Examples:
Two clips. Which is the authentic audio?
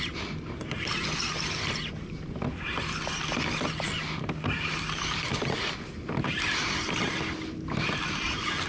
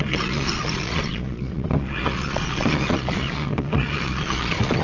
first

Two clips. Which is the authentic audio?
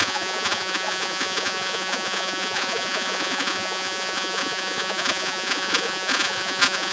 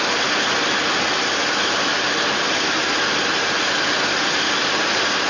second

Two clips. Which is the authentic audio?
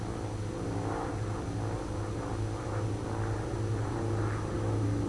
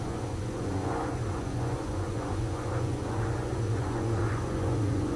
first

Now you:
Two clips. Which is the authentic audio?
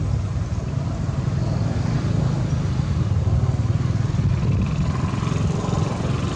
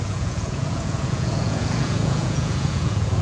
first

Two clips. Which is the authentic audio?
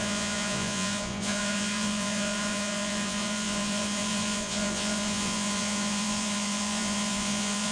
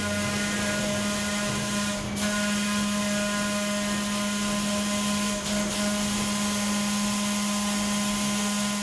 second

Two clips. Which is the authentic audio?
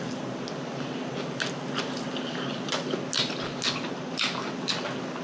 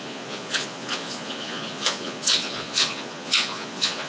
first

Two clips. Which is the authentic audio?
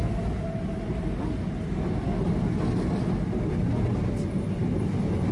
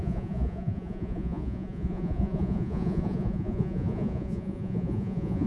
first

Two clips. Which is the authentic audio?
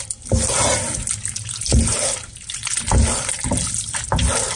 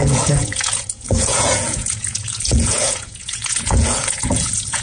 first